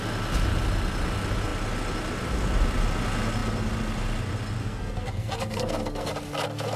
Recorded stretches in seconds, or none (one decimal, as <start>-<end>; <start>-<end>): 0.0-4.6; 6.1-6.8